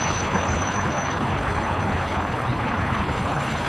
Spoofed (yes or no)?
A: yes